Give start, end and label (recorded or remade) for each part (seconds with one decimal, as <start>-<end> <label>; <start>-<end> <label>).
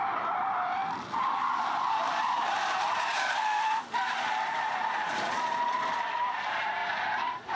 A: 0.0-2.0 recorded; 2.0-5.8 remade; 5.8-6.8 recorded; 6.8-7.6 remade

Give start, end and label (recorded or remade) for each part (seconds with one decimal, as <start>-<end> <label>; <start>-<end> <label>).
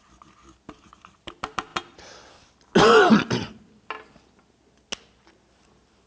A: 0.0-6.1 recorded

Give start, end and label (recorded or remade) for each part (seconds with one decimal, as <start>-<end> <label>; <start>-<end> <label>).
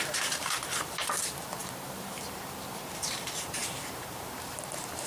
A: 0.0-5.1 remade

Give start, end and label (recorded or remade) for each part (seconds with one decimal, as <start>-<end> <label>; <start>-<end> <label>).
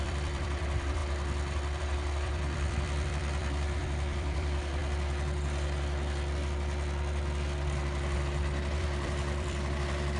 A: 0.0-1.0 remade; 1.0-1.8 recorded; 1.8-4.8 remade; 4.8-8.8 recorded; 8.8-10.2 remade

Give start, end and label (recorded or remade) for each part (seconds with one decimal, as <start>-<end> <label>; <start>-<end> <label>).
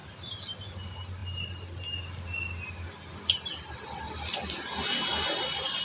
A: 0.0-0.7 remade; 0.7-5.8 recorded